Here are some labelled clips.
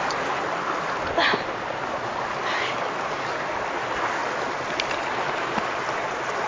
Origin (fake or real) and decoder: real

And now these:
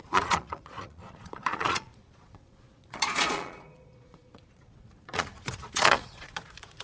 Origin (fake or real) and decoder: fake, vocoder, Vocos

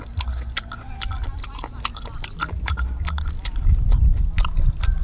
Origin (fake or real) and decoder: real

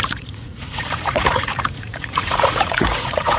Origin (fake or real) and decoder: fake, vocoder, Vocos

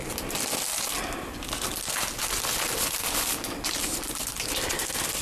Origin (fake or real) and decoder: real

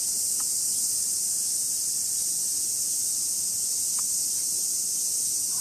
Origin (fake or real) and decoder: real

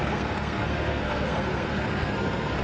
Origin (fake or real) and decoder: fake, codec, SNAC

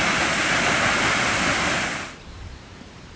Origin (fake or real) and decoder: real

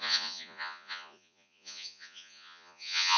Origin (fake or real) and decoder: fake, vocoder, Vocos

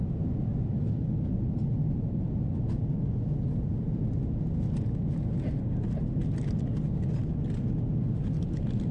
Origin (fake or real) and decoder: real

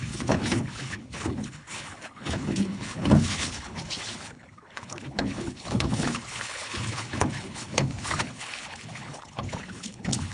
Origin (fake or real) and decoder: fake, codec, HILCodec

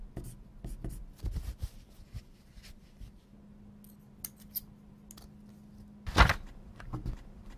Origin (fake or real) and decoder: real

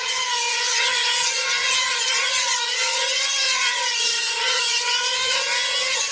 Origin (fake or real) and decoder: fake, vocoder, HiFi-GAN